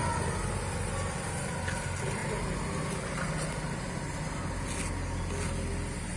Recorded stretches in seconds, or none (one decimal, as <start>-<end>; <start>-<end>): 0.0-6.2